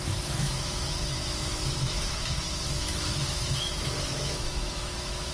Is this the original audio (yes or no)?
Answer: no